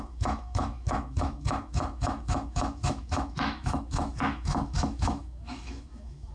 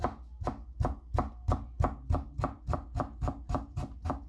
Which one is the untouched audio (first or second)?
second